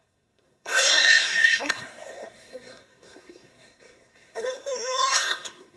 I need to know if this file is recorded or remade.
remade